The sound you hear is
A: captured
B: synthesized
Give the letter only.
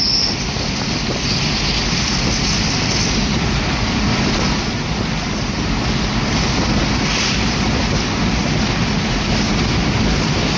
A